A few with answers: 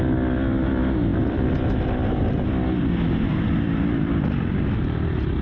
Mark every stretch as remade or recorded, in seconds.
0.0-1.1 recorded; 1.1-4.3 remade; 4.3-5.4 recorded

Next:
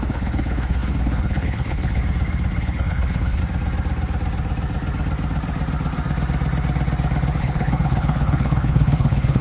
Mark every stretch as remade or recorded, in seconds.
0.0-2.0 remade; 2.0-2.6 recorded; 2.6-3.4 remade; 3.4-7.4 recorded; 7.4-9.4 remade

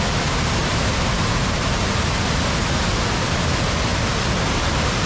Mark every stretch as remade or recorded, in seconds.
0.0-0.6 recorded; 0.6-2.2 remade; 2.2-5.1 recorded